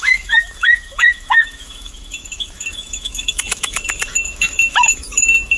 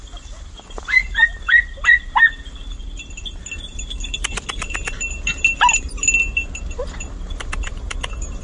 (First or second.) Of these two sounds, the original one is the second